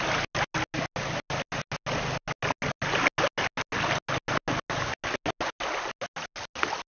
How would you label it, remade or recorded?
recorded